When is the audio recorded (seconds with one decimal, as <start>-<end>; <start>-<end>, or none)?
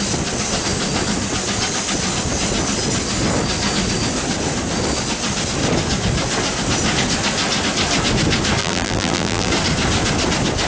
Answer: 0.0-8.6; 9.5-10.7